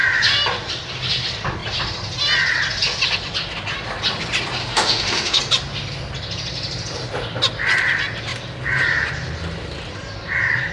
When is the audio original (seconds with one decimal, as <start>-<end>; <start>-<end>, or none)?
0.0-4.6; 5.4-10.7